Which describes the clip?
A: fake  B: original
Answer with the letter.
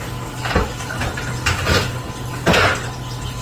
B